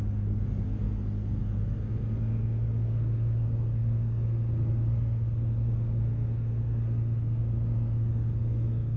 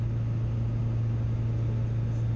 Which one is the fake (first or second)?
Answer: first